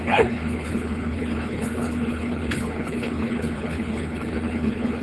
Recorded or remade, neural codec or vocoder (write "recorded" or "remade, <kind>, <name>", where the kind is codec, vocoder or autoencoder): remade, codec, HILCodec